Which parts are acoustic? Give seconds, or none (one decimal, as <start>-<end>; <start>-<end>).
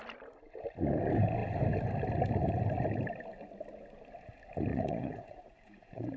0.0-4.7